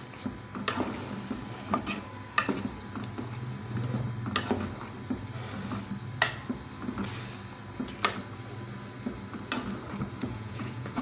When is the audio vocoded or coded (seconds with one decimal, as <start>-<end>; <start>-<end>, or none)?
10.2-11.0